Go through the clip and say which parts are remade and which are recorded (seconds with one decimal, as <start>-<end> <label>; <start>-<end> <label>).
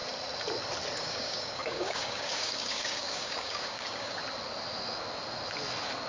0.0-1.0 recorded; 1.0-4.2 remade; 4.2-6.1 recorded